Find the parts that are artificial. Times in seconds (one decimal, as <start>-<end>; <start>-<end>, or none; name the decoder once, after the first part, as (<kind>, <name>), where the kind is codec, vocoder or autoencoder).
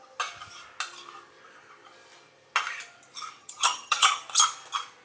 3.4-4.2 (vocoder, HiFi-GAN)